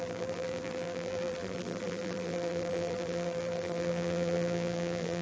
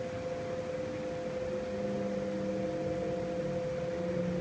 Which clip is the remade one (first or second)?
first